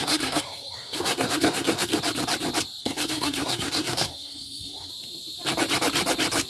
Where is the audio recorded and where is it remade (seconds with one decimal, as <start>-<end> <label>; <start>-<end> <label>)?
0.0-1.9 remade; 1.9-2.8 recorded; 2.8-4.9 remade; 4.9-6.5 recorded